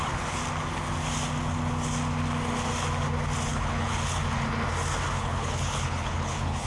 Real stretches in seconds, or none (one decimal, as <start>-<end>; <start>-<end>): 0.4-3.5; 4.2-5.2

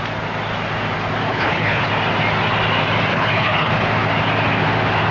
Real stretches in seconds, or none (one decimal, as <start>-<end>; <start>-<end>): 0.0-1.3; 1.9-3.1; 3.7-5.1

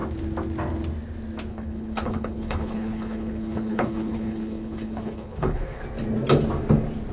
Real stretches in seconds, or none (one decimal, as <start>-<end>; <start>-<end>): 0.0-1.5; 5.8-7.1

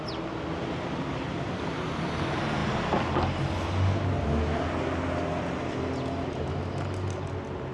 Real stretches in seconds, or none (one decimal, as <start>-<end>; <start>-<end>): 0.0-7.7

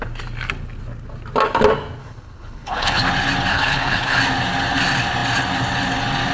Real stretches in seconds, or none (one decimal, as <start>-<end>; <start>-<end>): 0.0-2.0; 3.0-3.5; 4.2-6.3

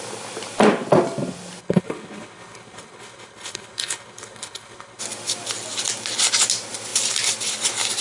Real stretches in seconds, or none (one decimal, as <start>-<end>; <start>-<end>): 0.0-1.6; 5.0-8.0

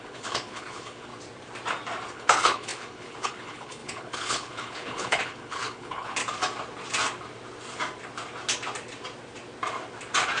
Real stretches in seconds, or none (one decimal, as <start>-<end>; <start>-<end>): 1.1-2.1; 6.2-10.4

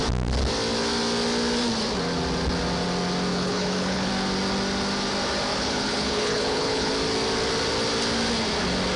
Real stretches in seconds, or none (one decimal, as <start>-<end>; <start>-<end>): 0.0-3.3; 4.1-5.5; 6.9-9.0